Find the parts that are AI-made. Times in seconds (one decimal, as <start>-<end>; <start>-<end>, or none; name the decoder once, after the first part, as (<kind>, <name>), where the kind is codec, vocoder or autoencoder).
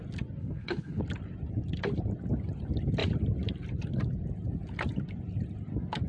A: 0.4-1.0 (codec, HILCodec)